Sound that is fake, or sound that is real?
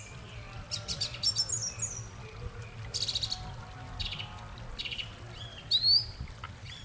real